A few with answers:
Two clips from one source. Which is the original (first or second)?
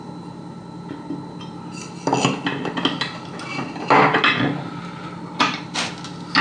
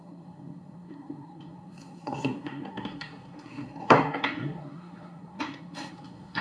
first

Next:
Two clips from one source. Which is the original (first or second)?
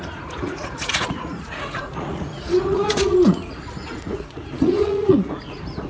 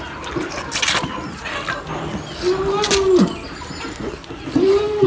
second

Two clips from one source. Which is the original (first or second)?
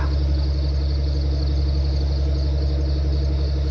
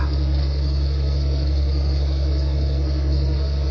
first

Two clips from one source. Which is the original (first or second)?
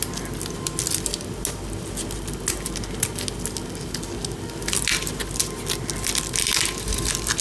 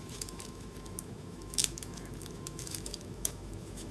first